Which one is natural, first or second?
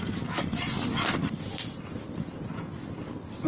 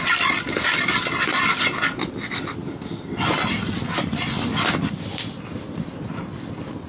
first